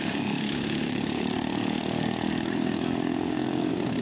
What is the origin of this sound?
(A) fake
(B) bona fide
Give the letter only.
A